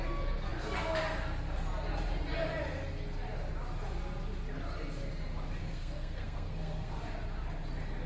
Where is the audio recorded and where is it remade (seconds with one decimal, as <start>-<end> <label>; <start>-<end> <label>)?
0.0-5.6 recorded; 5.6-7.0 remade; 7.0-8.1 recorded